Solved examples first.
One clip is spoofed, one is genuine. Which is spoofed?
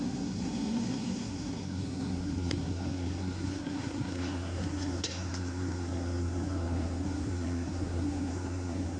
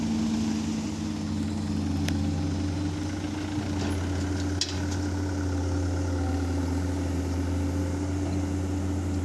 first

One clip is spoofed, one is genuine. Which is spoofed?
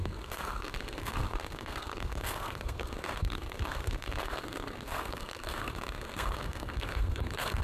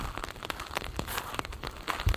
first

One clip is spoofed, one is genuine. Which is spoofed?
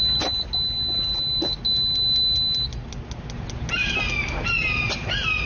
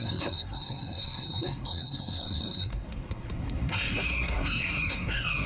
second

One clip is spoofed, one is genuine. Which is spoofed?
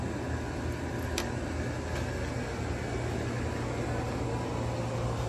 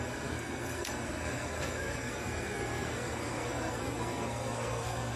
second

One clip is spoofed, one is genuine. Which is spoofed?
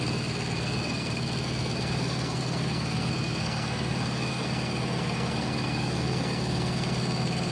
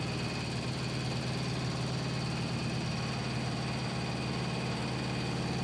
first